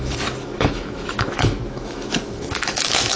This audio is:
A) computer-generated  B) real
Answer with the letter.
A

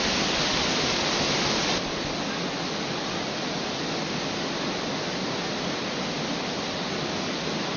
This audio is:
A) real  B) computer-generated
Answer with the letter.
A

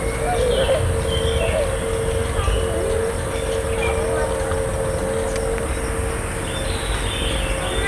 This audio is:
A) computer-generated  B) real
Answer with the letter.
B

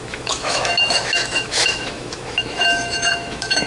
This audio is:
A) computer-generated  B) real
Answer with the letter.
A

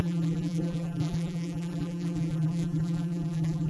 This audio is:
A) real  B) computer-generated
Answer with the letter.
B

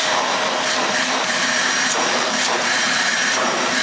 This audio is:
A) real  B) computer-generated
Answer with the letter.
B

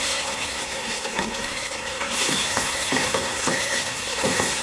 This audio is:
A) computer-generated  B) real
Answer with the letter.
A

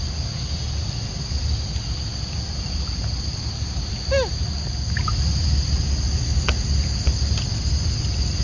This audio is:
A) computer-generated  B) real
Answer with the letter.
B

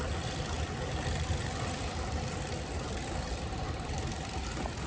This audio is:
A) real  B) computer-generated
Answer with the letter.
A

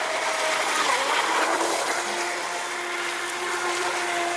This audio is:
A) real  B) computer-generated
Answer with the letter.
A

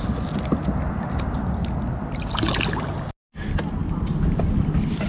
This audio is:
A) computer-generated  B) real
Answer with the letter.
B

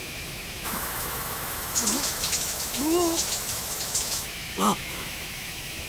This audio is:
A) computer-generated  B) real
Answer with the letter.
A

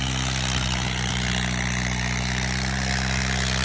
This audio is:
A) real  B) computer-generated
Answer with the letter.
A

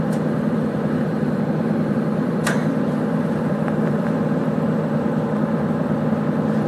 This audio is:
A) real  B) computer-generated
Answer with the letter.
B